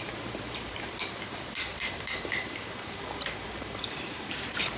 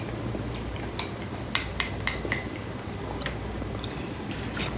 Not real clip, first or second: first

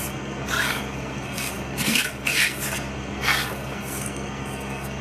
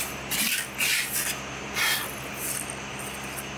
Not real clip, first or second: first